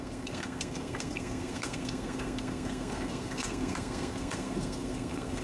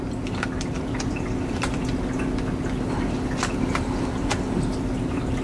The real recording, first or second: second